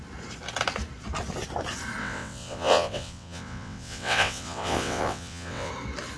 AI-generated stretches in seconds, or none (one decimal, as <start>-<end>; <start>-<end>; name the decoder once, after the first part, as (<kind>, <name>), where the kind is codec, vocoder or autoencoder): 2.0-5.7 (vocoder, WaveNeXt)